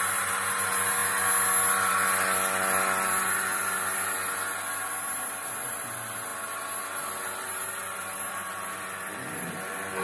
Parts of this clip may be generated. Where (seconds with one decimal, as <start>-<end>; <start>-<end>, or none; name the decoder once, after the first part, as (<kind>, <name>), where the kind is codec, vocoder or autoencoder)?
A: none